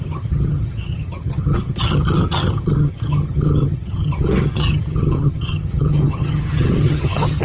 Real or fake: fake